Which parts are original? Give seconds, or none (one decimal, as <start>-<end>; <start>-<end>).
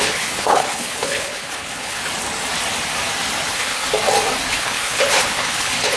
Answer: 2.0-3.5; 3.9-4.5